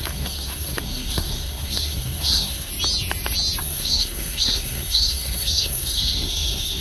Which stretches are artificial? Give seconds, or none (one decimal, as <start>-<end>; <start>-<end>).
0.0-2.7; 3.6-6.8